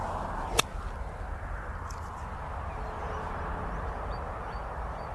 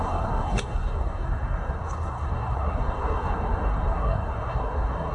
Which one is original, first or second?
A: first